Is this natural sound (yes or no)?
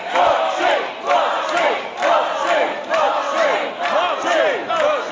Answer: yes